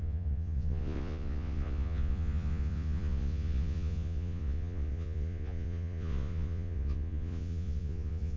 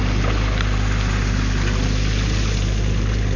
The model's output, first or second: first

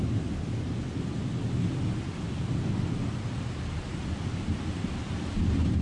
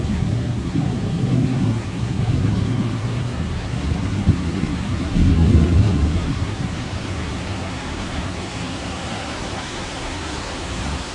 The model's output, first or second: second